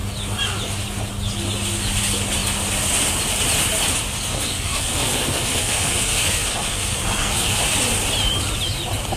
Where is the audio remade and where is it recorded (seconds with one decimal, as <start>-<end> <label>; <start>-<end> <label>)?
0.0-4.3 recorded; 4.3-7.6 remade; 7.6-9.2 recorded